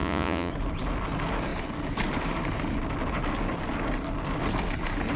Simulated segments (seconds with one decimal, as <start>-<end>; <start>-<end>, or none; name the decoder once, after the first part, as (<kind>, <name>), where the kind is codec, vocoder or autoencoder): 0.0-0.5 (vocoder, Vocos)